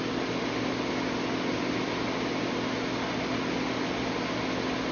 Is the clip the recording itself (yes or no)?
yes